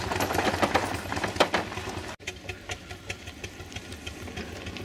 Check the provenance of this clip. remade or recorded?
recorded